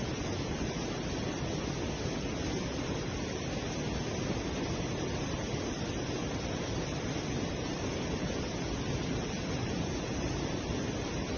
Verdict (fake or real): real